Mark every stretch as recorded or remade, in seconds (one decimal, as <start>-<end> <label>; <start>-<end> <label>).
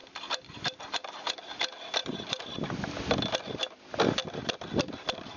0.0-5.4 recorded